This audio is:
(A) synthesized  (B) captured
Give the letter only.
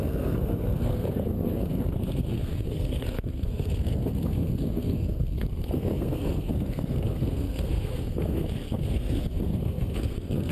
A